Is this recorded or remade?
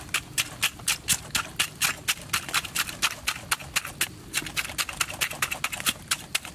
recorded